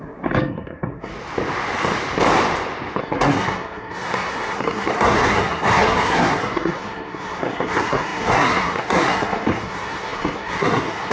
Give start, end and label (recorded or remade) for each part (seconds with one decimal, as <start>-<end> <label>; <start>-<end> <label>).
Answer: 0.0-1.1 remade; 1.1-3.0 recorded; 3.0-11.1 remade